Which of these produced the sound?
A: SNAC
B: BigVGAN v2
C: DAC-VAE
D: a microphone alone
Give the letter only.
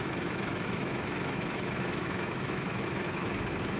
C